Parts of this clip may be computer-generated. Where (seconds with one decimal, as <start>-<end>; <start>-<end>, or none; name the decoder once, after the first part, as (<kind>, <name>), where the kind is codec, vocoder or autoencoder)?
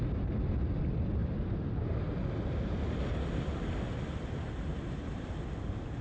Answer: 4.7-5.4 (vocoder, BigVGAN v2)